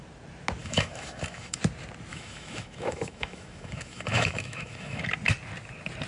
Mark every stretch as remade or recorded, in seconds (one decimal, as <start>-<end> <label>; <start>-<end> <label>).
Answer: 0.0-0.6 recorded; 0.6-1.6 remade; 1.6-2.1 recorded; 2.1-5.0 remade; 5.0-6.1 recorded